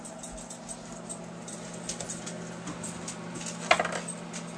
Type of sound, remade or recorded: recorded